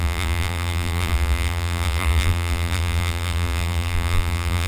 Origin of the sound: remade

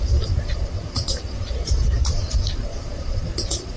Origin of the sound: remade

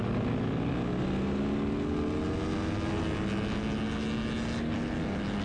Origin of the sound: recorded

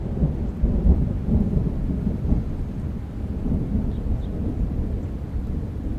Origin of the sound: recorded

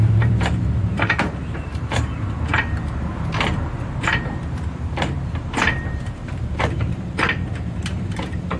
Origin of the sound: remade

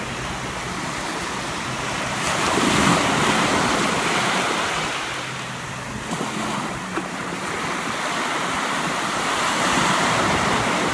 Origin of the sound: recorded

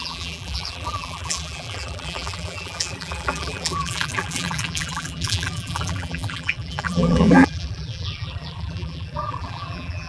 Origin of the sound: remade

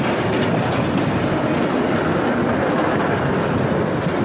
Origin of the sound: recorded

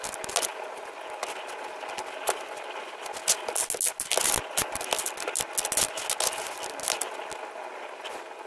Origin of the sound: recorded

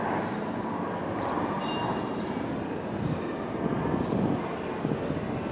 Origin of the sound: recorded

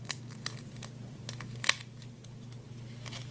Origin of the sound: recorded